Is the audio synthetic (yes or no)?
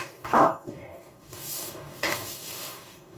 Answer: yes